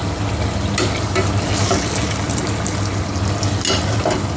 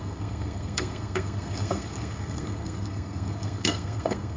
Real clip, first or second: first